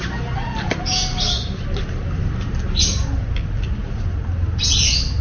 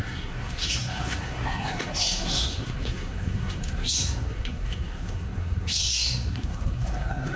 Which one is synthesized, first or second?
second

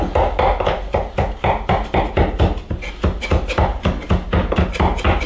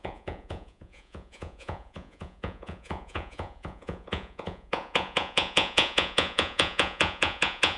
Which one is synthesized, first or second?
second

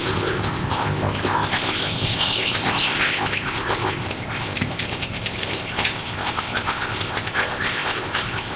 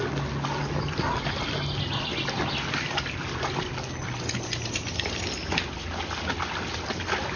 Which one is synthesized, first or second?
first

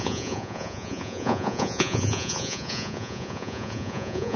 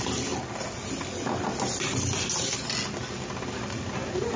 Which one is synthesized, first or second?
first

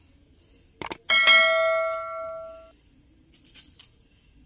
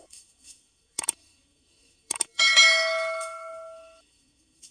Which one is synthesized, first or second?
second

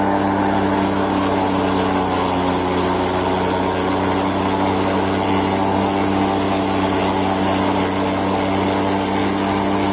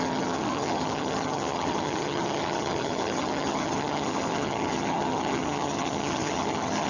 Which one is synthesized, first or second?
second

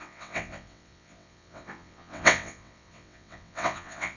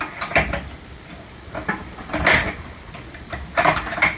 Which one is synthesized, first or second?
first